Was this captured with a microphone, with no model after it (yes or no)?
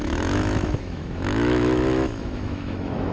no